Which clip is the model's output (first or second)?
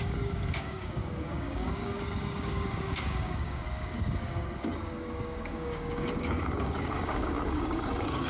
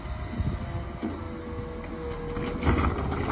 first